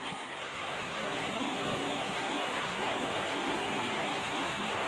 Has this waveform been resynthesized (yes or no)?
yes